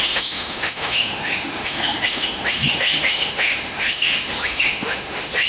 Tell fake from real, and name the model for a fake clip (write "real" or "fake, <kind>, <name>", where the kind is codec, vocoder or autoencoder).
fake, autoencoder, DAC-VAE